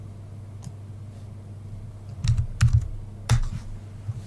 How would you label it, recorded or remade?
recorded